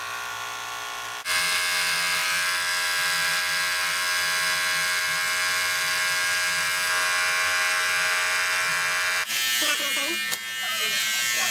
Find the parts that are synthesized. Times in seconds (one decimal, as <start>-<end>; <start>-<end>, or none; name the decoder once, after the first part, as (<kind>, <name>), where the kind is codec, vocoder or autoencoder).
none